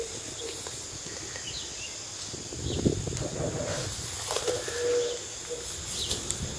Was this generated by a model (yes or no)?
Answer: no